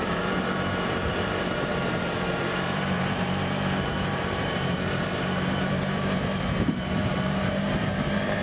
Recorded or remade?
remade